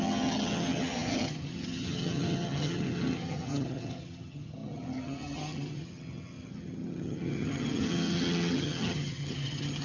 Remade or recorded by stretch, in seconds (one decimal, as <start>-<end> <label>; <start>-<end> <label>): 0.0-9.8 remade